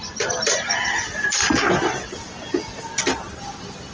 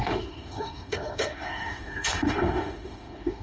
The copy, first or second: second